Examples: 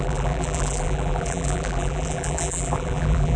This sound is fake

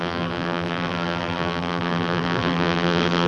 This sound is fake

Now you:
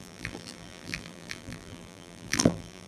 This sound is fake